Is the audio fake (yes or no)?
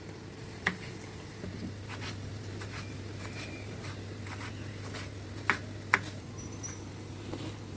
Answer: no